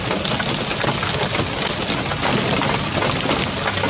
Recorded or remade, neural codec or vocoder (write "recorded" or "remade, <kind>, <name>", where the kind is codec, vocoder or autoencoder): recorded